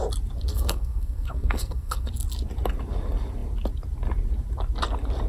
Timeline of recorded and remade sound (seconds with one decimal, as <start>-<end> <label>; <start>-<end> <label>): 0.0-0.5 recorded; 0.5-2.1 remade; 2.1-5.3 recorded